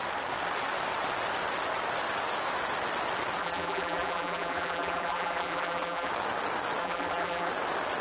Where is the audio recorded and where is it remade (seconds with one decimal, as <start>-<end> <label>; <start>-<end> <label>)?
0.0-3.4 recorded; 3.4-6.1 remade; 6.1-6.8 recorded; 6.8-7.5 remade; 7.5-8.0 recorded